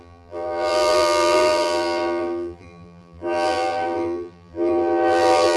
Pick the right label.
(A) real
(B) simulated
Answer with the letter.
B